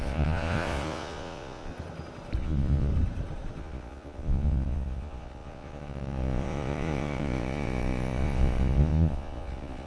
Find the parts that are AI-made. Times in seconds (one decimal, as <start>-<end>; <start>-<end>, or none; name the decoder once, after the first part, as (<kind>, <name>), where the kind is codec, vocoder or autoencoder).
0.0-1.7 (vocoder, Vocos); 2.4-2.9; 3.6-9.9